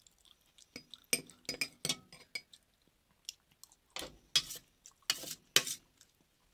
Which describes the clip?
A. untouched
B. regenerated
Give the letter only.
A